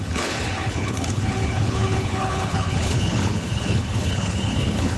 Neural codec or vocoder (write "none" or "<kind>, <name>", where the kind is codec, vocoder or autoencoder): codec, HILCodec